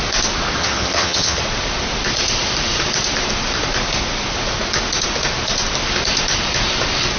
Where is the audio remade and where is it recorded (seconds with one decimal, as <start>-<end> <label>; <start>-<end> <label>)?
0.0-0.6 recorded; 0.6-1.4 remade; 1.4-7.2 recorded